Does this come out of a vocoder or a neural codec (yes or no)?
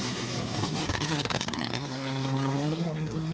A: yes